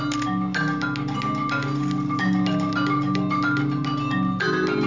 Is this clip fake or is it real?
real